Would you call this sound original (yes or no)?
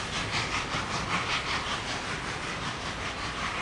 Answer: yes